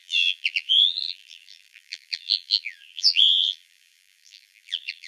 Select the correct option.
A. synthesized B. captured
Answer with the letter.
A